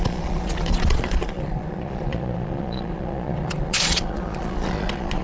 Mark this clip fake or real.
fake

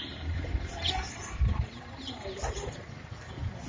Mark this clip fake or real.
fake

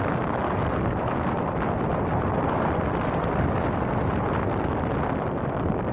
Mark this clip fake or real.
real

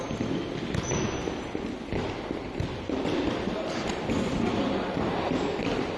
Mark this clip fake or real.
real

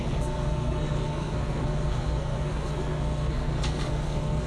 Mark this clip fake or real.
fake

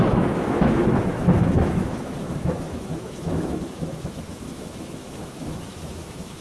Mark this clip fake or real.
fake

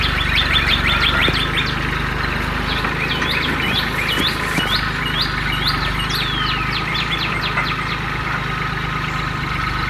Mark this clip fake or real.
real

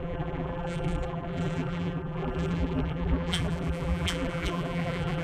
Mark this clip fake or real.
fake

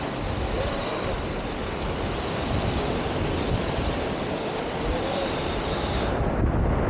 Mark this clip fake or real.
real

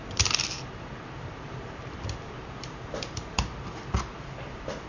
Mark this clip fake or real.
fake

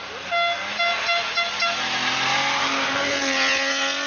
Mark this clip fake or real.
real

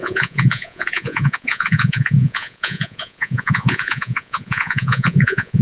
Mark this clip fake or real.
fake